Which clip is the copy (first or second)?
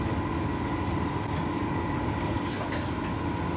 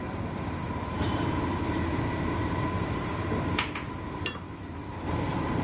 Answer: second